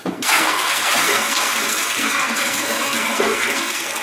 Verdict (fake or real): fake